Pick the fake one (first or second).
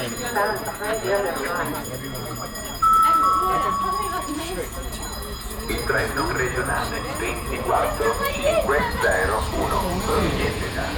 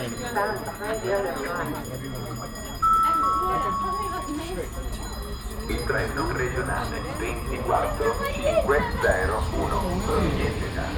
first